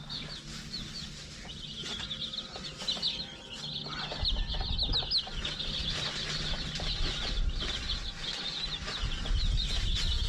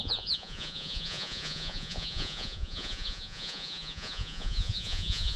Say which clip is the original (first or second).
first